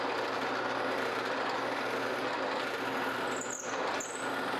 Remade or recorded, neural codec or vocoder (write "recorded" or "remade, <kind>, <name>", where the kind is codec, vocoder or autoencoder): recorded